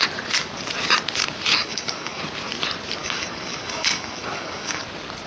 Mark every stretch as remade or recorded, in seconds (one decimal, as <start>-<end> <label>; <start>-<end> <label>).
0.0-1.6 recorded; 1.6-2.2 remade; 2.2-3.0 recorded; 3.0-4.8 remade; 4.8-5.3 recorded